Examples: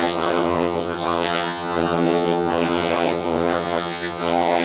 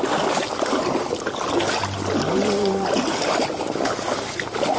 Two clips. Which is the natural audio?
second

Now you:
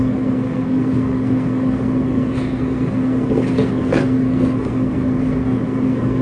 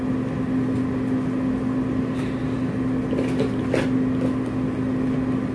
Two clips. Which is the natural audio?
second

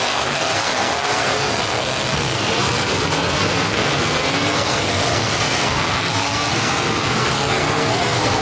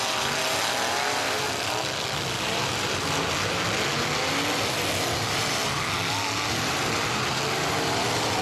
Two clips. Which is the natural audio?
second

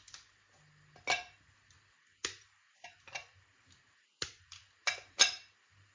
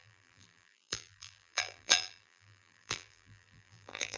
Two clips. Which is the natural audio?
first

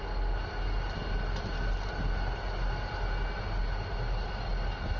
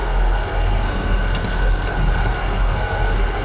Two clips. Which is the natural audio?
first